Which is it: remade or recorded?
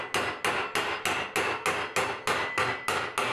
recorded